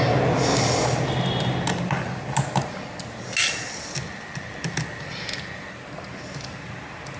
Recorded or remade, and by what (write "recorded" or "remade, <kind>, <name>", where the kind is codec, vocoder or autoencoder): recorded